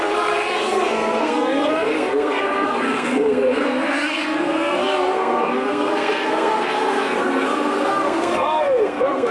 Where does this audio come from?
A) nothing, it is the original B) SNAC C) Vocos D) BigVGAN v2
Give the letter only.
B